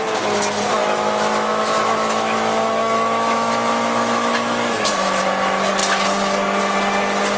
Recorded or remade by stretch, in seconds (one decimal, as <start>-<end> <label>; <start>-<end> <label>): 0.0-0.8 recorded; 0.8-5.2 remade; 5.2-7.4 recorded